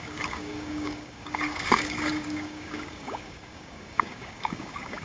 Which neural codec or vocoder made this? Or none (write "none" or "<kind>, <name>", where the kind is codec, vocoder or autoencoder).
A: codec, DAC